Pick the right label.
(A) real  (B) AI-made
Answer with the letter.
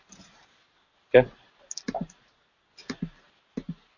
A